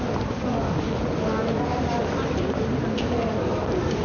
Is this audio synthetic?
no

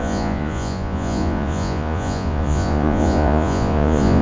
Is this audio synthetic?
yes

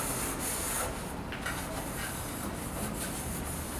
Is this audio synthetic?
no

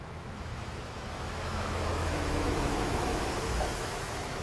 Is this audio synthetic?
yes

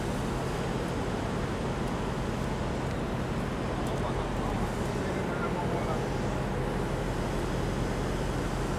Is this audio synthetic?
no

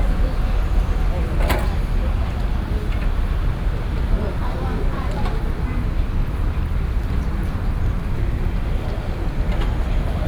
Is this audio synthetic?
no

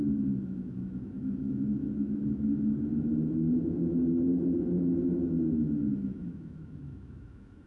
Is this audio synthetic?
yes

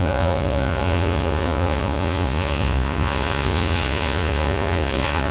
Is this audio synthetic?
yes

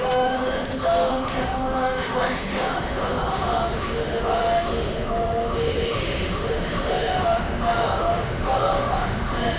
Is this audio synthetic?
yes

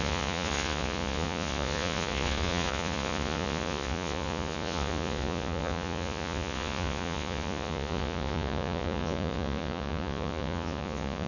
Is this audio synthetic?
yes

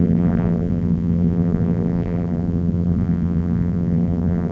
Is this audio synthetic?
yes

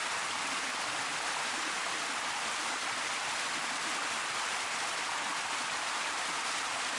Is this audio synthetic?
no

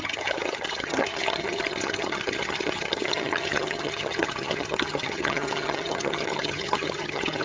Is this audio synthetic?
yes